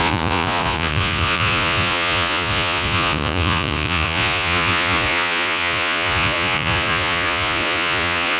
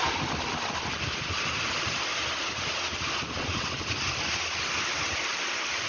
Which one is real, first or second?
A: second